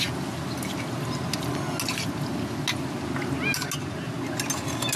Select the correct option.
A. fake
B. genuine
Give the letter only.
B